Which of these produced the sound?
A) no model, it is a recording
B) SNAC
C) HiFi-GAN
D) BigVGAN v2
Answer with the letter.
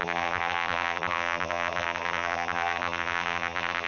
D